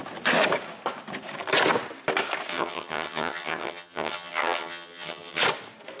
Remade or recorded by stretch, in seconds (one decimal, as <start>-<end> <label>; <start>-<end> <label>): 0.0-2.5 recorded; 2.5-5.4 remade; 5.4-6.0 recorded